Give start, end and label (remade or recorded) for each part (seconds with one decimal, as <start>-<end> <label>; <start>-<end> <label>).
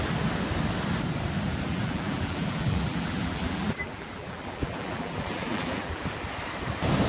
0.0-1.7 recorded; 1.7-6.0 remade; 6.0-7.1 recorded